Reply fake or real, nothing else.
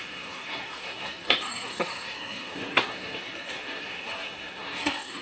fake